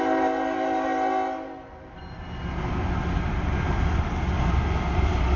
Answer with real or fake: real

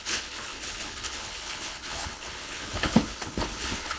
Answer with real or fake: fake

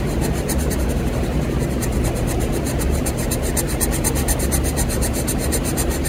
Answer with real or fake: real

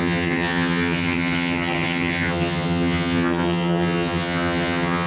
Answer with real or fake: fake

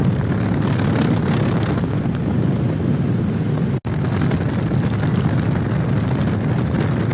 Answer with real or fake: real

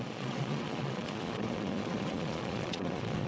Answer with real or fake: fake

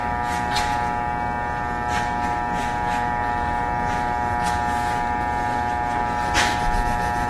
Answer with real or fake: real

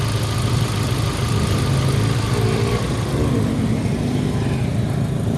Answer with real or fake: real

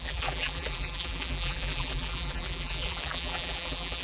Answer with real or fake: fake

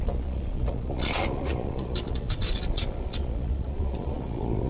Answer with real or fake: fake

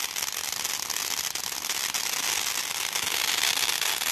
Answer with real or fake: real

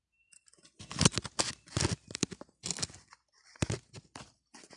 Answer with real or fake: real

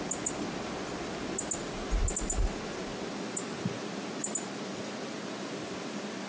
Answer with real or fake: real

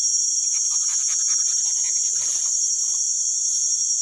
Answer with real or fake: real